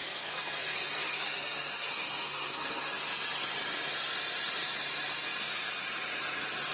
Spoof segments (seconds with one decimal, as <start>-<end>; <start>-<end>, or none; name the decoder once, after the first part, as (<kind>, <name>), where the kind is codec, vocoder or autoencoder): 0.0-3.0 (codec, SNAC)